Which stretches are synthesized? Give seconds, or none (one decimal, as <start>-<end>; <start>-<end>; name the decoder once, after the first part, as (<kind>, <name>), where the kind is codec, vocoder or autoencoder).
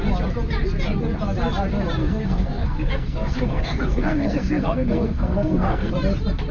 2.0-5.9 (codec, SNAC)